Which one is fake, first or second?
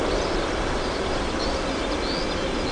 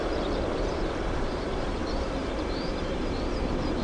second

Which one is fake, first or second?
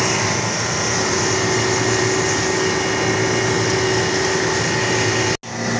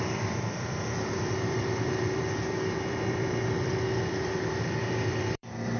second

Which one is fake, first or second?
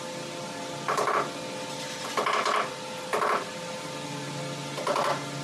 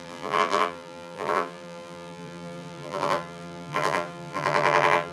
second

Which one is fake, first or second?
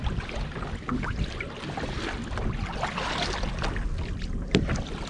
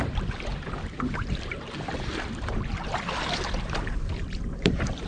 second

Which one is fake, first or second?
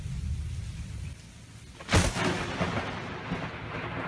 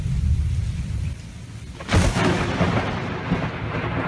second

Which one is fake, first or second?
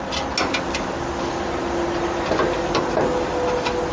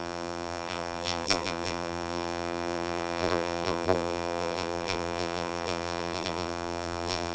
second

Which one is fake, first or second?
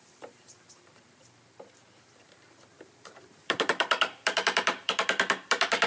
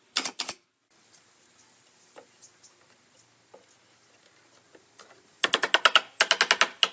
first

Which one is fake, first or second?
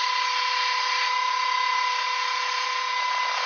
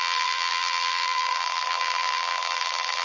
second